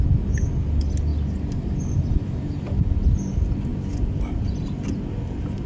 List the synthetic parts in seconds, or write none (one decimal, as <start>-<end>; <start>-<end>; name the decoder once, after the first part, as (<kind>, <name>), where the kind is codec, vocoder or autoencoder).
none